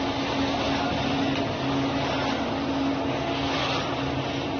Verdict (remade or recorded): recorded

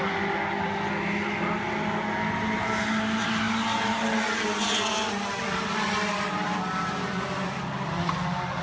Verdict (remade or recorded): recorded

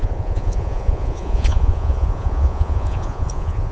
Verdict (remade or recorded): remade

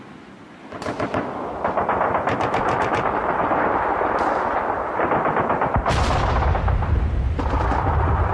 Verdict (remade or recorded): recorded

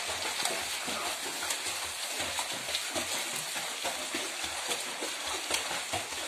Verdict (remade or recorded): recorded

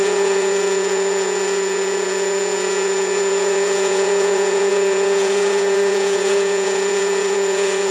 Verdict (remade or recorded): remade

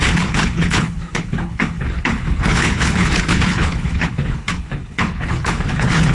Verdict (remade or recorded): remade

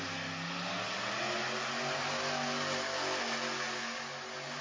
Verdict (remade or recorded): recorded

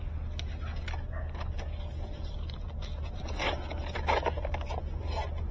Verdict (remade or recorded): recorded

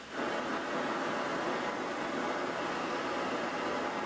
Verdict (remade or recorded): recorded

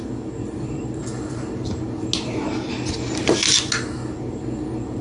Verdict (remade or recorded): recorded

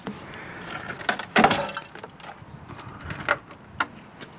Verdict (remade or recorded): recorded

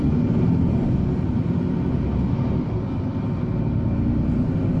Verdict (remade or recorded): recorded